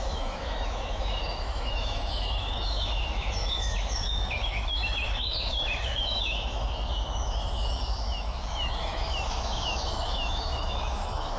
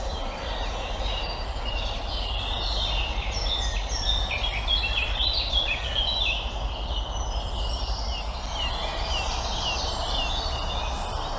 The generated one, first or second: first